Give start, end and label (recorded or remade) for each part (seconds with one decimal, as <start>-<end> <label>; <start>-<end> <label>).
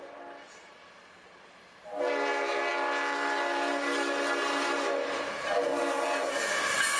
0.0-7.0 recorded